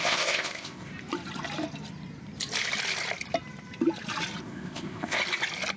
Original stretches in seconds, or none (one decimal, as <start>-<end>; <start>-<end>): 0.9-4.4; 5.2-5.8